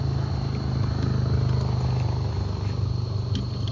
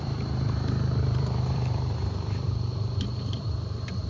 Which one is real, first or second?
first